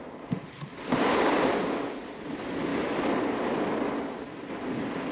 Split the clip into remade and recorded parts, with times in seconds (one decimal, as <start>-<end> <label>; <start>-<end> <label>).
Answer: 0.0-2.7 recorded; 2.7-4.5 remade; 4.5-5.1 recorded